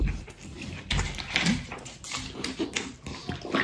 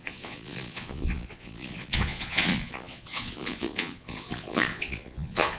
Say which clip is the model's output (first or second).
second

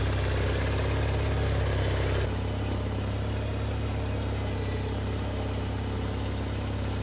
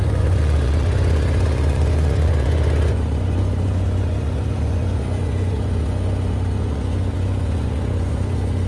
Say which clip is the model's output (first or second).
second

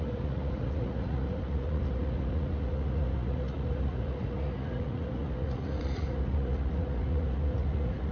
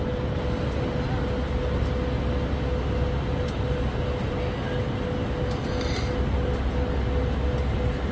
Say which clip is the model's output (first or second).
first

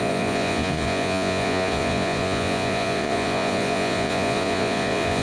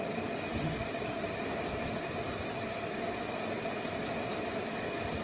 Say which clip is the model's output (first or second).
first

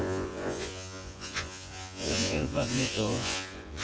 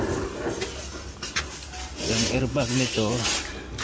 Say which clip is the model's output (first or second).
first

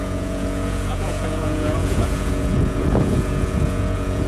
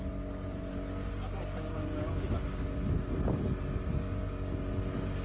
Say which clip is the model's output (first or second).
first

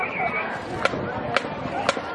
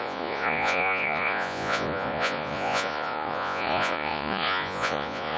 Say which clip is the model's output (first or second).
second